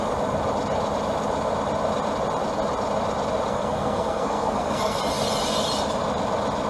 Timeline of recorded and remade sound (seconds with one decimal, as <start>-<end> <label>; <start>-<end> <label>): 0.0-3.5 recorded; 3.5-5.0 remade; 5.0-6.7 recorded